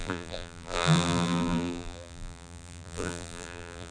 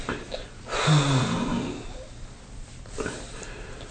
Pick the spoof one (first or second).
first